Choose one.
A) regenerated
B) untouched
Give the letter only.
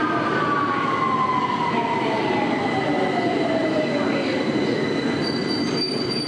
B